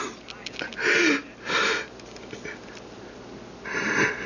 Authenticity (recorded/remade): recorded